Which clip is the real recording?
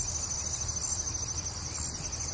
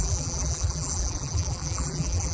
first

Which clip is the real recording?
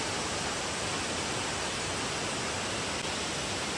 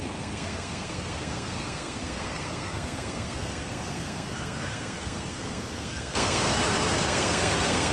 first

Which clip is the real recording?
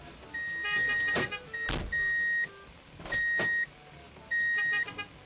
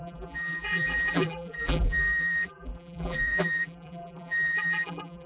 first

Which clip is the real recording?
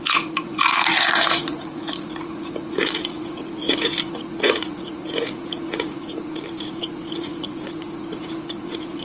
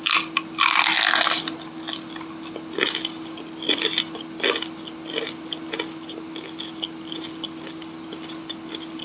second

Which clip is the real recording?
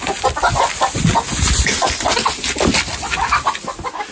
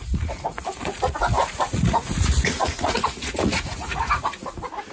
first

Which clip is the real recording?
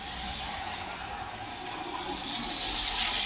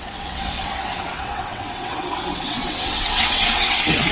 first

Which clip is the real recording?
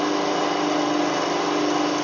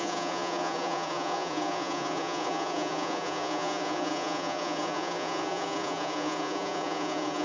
first